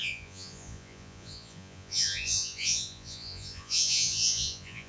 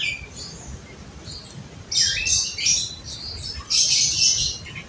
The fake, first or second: first